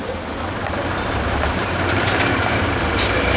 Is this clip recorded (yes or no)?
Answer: no